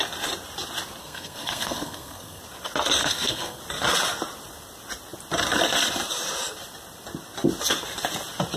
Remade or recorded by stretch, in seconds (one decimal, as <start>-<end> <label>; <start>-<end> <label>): 0.0-1.0 recorded; 1.0-2.4 remade; 2.4-3.0 recorded; 3.0-3.6 remade; 3.6-8.6 recorded